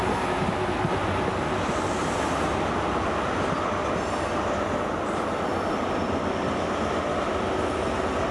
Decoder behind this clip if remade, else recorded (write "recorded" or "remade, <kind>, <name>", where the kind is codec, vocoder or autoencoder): recorded